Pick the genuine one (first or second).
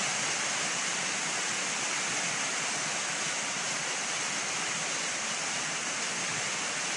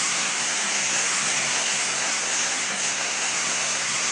first